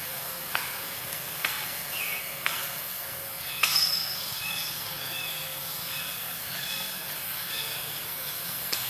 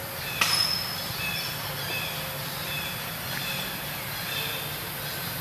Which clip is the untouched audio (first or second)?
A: second